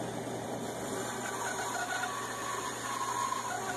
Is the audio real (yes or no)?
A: no